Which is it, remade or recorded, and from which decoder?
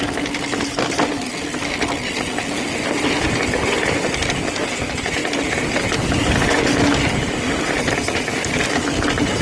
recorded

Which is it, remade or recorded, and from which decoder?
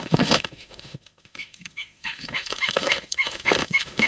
remade, autoencoder, DAC-VAE